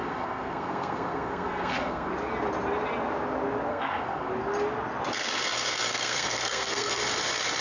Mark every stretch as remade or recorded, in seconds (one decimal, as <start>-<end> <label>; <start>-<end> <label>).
0.0-2.1 remade; 2.1-3.7 recorded; 3.7-4.3 remade; 4.3-5.9 recorded; 5.9-7.0 remade; 7.0-7.6 recorded